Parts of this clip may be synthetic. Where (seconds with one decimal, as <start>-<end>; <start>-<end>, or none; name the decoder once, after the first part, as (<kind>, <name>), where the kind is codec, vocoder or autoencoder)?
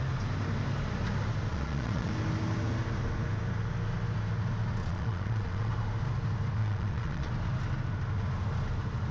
1.5-2.1 (vocoder, Vocos); 4.8-5.7; 6.6-7.3